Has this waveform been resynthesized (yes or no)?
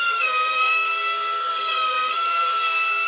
yes